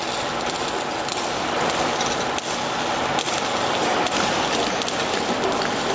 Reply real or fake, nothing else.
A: real